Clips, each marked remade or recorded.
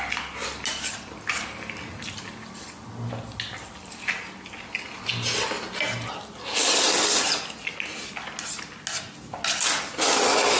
recorded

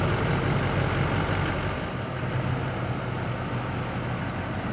recorded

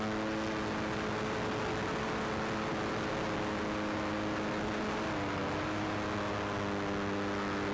recorded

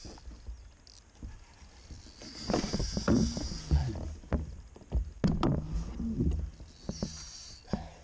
recorded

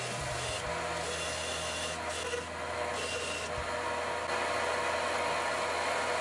recorded